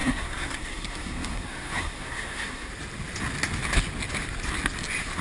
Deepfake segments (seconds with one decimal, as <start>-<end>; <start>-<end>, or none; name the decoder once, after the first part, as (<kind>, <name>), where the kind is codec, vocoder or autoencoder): 0.0-2.7 (codec, SNAC)